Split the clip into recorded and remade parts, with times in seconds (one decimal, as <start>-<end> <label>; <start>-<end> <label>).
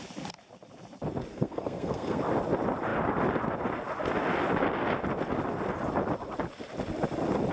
0.0-1.3 recorded; 1.3-2.2 remade; 2.2-7.5 recorded